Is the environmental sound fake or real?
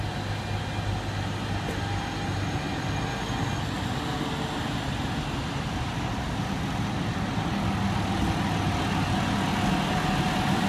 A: real